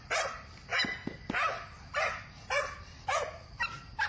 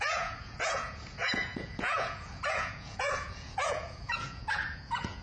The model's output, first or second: second